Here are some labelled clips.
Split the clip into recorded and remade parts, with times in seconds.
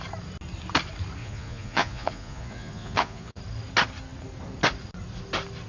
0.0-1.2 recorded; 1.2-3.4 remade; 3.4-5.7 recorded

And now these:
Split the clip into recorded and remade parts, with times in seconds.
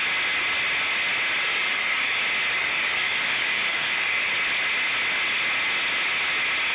0.0-1.5 recorded; 1.5-2.2 remade; 2.2-2.6 recorded; 2.6-4.3 remade; 4.3-6.7 recorded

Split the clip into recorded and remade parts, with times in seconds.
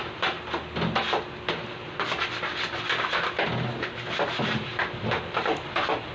0.0-6.1 recorded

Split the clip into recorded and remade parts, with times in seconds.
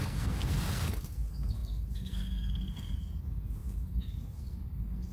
0.0-5.1 remade